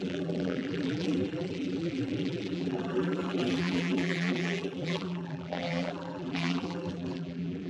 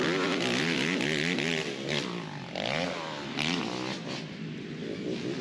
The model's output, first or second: first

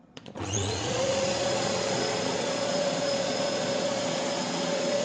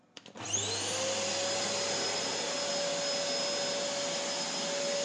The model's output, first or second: first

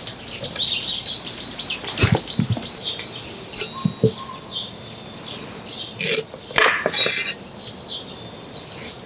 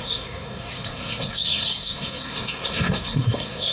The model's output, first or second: second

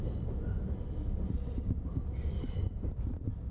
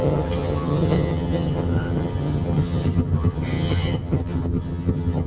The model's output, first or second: second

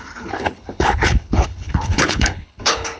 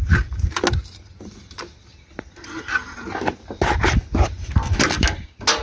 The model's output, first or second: first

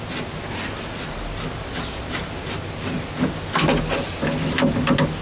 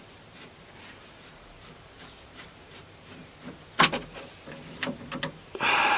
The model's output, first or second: second